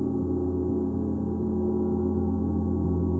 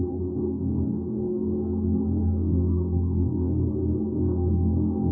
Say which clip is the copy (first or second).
second